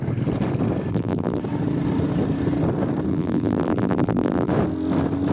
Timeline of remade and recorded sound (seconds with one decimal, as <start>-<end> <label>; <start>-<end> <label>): 0.0-0.9 recorded; 0.9-1.4 remade; 1.4-3.1 recorded; 3.1-4.5 remade; 4.5-5.3 recorded